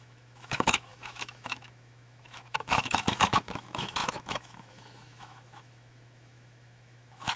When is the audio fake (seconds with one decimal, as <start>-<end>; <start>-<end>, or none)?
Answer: 0.0-7.4